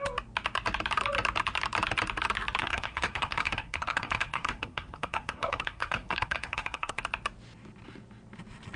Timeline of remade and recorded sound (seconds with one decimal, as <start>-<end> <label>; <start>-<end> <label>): 0.0-2.6 recorded; 2.6-7.0 remade; 7.0-8.8 recorded